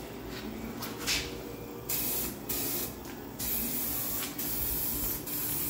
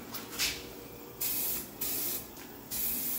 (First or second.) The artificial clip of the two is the second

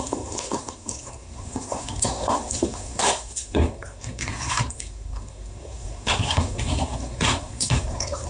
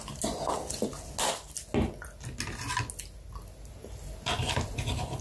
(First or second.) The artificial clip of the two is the first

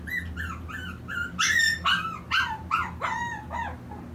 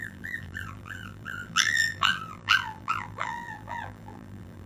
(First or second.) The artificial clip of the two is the second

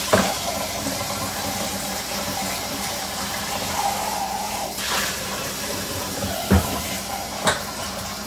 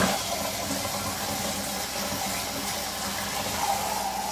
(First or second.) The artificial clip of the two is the first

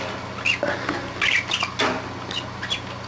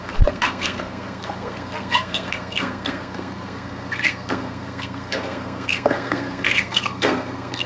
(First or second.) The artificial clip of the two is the second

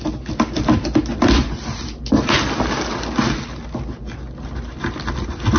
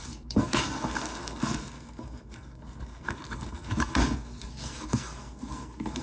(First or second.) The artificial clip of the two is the second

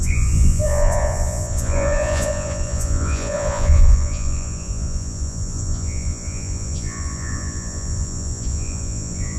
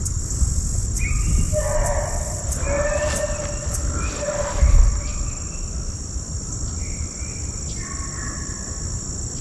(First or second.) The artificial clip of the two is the first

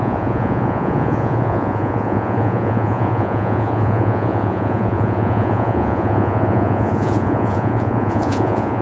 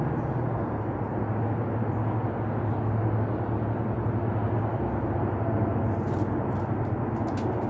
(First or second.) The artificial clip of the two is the first